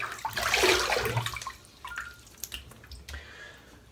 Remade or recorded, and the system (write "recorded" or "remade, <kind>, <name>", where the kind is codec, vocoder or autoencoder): recorded